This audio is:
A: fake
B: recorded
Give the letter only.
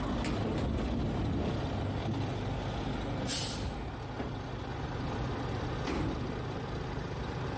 B